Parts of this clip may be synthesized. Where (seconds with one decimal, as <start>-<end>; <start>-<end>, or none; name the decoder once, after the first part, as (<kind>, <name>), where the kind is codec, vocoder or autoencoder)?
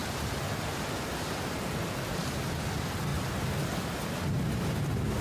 none